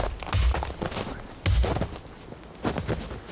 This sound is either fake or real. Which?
real